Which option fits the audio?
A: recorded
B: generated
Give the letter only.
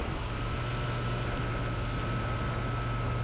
A